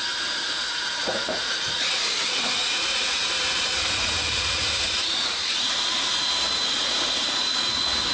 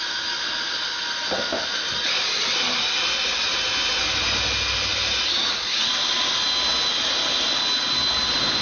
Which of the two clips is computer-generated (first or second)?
first